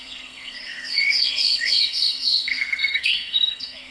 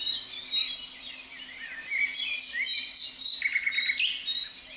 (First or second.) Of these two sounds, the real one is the second